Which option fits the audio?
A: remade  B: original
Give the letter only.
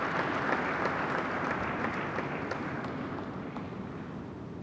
B